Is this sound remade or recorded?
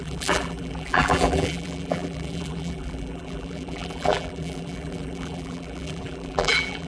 remade